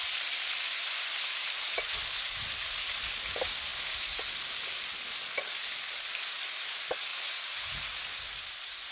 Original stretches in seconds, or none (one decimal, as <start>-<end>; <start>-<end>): 0.0-7.1; 8.0-8.9